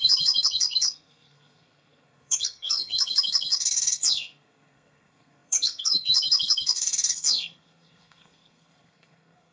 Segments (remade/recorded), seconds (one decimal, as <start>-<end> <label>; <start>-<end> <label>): 0.0-9.5 remade